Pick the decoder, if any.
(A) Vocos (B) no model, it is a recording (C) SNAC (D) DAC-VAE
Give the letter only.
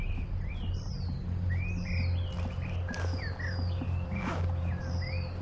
B